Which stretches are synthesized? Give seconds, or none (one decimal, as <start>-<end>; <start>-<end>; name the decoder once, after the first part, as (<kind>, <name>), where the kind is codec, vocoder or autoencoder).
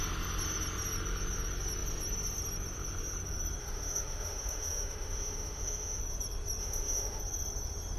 3.6-6.0 (autoencoder, DAC-VAE); 6.6-7.2